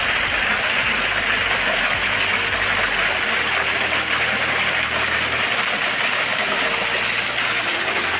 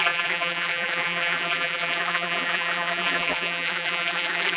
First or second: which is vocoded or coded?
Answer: second